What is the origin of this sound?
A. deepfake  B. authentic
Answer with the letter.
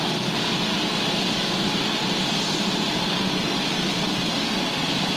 B